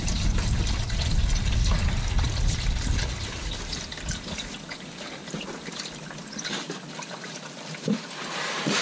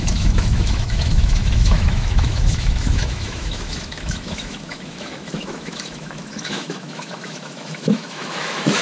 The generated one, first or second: second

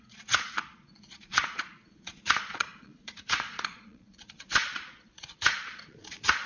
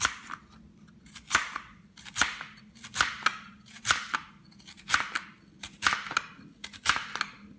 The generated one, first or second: first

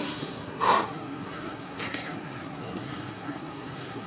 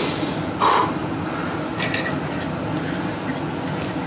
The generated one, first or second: first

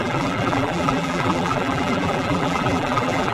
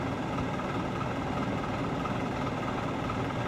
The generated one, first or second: first